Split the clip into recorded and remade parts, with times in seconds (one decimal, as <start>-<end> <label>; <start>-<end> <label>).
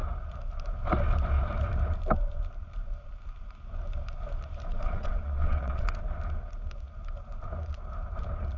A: 0.0-4.7 recorded; 4.7-5.8 remade; 5.8-8.6 recorded